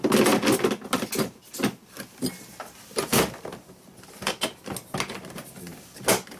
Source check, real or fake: real